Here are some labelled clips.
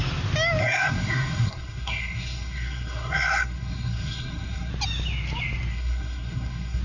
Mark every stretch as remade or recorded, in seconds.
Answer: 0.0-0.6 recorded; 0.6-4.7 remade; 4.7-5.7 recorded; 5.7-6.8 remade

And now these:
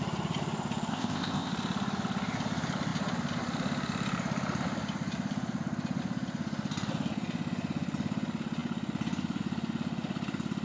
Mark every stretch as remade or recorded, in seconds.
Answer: 0.0-0.9 recorded; 0.9-1.5 remade; 1.5-10.6 recorded

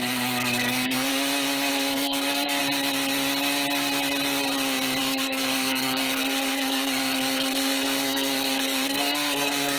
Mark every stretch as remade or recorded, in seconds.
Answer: 0.0-1.1 remade; 1.1-1.7 recorded; 1.7-2.6 remade; 2.6-5.0 recorded; 5.0-9.8 remade

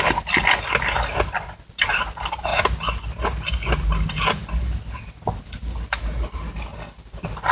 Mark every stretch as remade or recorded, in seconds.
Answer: 0.0-7.5 recorded

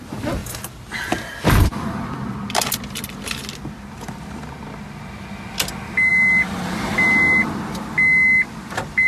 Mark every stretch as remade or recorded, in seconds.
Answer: 0.0-9.1 recorded

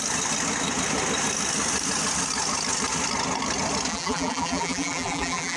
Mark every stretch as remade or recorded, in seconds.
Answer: 0.0-3.9 recorded; 3.9-5.6 remade

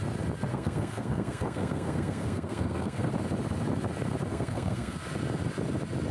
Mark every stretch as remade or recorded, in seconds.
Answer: 0.0-0.5 recorded; 0.5-3.1 remade; 3.1-4.3 recorded; 4.3-5.0 remade; 5.0-6.1 recorded